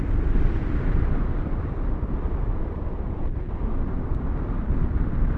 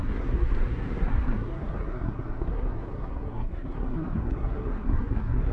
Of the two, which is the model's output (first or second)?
second